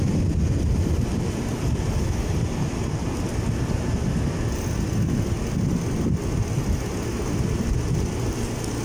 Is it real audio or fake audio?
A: real